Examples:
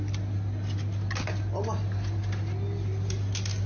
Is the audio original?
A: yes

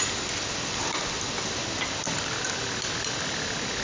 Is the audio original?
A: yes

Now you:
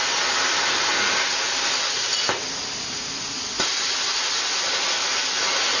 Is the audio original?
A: yes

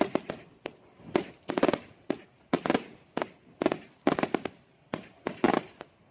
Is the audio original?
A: yes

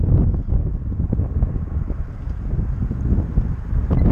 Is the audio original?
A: yes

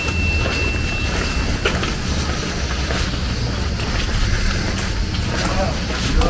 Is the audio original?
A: yes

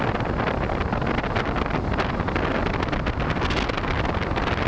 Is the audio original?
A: yes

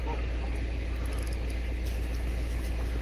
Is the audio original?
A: yes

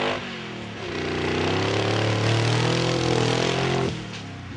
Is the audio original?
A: yes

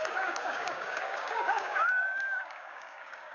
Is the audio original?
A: no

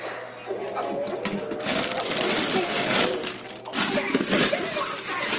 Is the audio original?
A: yes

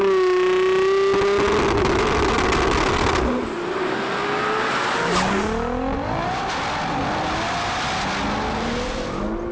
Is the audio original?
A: yes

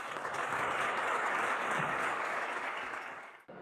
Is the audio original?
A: no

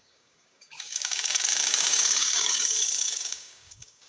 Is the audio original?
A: no